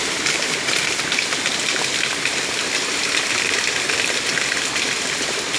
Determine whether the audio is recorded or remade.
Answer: remade